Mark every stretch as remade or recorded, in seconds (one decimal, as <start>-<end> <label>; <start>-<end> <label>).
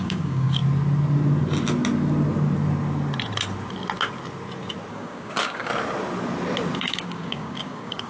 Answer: 0.0-0.6 remade; 0.6-4.9 recorded; 4.9-5.7 remade; 5.7-6.8 recorded; 6.8-8.1 remade